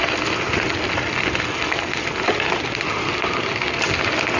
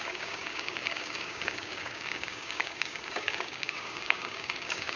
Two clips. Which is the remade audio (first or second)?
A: second